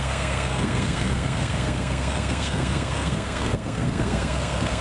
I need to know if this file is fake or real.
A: fake